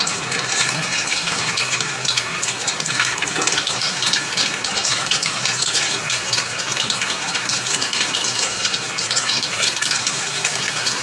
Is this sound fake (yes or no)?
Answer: yes